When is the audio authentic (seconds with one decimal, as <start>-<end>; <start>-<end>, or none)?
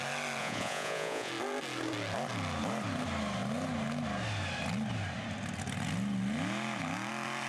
0.0-0.4; 1.3-7.5